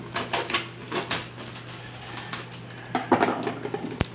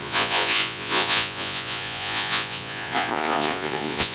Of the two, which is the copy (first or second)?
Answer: second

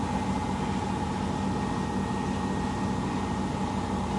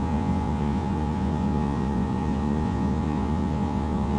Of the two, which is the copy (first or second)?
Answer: second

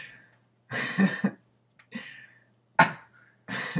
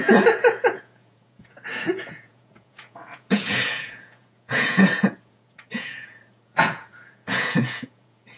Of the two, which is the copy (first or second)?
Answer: second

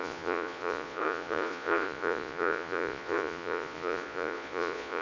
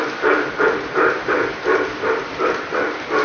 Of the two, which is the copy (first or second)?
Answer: first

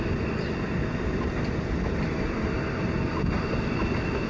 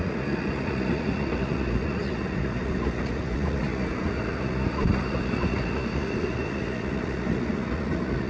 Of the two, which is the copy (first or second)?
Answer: second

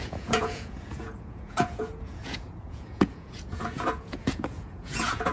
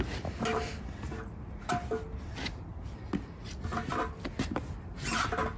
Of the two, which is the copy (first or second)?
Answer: first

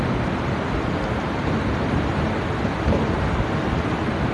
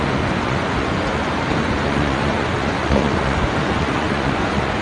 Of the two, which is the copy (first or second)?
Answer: second